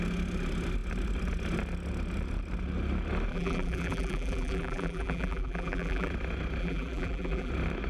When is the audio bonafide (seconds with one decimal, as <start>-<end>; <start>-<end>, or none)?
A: 0.0-3.3; 6.1-6.6; 7.5-7.9